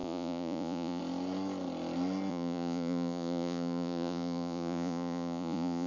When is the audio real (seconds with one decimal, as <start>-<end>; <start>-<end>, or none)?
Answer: 1.0-2.3